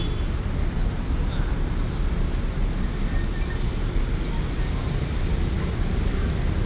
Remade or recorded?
recorded